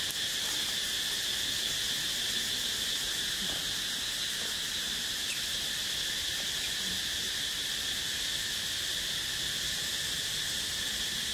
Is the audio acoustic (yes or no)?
yes